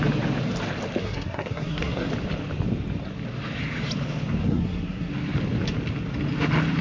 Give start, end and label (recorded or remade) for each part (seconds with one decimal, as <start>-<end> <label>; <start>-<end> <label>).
0.0-1.0 recorded; 1.0-2.1 remade; 2.1-4.4 recorded; 4.4-5.1 remade; 5.1-6.8 recorded